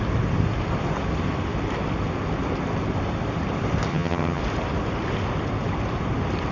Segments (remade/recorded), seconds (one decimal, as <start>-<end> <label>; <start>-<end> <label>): 0.0-3.9 recorded; 3.9-4.4 remade; 4.4-6.5 recorded